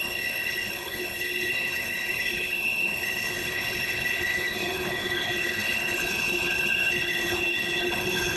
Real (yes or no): no